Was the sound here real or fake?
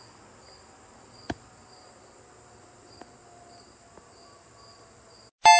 real